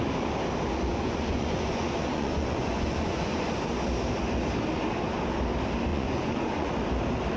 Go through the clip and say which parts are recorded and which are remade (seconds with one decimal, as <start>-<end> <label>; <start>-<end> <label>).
0.0-0.9 recorded; 0.9-3.5 remade; 3.5-5.9 recorded; 5.9-6.7 remade; 6.7-7.4 recorded